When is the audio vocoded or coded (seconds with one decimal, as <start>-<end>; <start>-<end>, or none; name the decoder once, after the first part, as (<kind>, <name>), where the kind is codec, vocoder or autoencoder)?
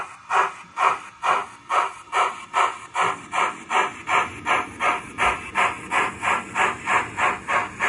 none